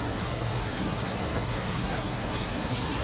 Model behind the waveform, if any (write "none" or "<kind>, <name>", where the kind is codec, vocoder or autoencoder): codec, SNAC